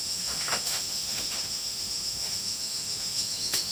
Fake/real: fake